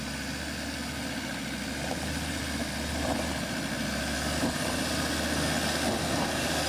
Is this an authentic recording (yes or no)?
yes